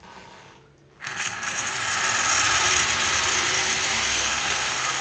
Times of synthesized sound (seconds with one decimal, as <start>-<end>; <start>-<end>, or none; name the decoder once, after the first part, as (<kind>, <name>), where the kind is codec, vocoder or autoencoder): 1.0-1.8 (codec, SNAC); 4.1-5.0